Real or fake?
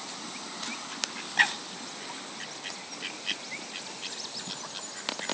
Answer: real